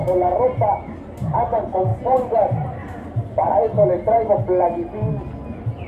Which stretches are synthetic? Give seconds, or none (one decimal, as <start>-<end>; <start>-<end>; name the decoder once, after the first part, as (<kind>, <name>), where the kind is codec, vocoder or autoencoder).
1.9-3.5 (vocoder, BigVGAN v2)

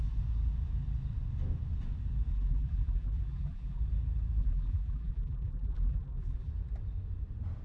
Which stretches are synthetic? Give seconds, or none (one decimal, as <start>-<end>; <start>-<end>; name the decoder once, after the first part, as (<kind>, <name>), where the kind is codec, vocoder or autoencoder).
2.3-3.8 (vocoder, BigVGAN v2); 4.4-6.5

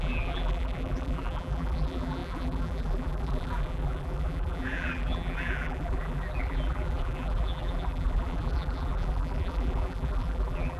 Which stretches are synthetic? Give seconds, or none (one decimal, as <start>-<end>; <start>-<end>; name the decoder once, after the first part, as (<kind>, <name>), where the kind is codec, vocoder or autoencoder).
0.0-10.8 (vocoder, BigVGAN v2)

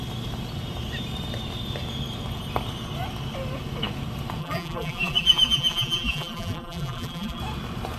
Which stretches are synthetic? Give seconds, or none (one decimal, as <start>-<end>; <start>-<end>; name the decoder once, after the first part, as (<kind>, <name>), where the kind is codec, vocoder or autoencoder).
4.4-7.4 (vocoder, BigVGAN v2)

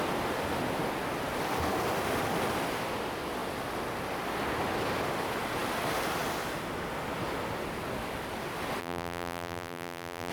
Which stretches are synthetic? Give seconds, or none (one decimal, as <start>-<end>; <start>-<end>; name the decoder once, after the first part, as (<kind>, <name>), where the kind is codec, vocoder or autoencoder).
8.8-10.3 (vocoder, BigVGAN v2)

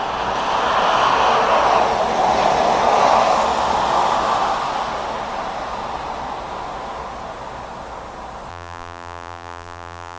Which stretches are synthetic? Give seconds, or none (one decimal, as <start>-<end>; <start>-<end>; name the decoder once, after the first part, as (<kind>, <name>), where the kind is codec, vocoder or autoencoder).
8.5-10.2 (vocoder, BigVGAN v2)

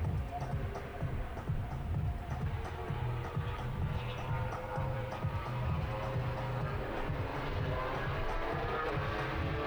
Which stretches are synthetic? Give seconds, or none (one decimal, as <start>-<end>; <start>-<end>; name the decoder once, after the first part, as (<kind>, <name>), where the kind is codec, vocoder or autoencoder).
0.9-5.9 (vocoder, BigVGAN v2); 7.3-8.9

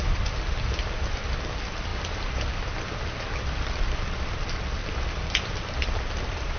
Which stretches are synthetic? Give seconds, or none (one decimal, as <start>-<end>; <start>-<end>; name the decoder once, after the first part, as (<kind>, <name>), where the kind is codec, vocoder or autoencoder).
none